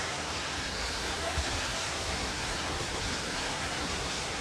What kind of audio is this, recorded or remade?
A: remade